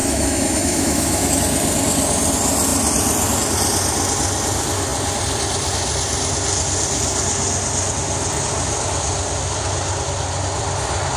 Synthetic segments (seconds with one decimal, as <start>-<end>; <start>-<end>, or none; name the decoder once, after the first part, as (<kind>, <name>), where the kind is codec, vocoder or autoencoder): 0.0-1.3 (autoencoder, DAC-VAE)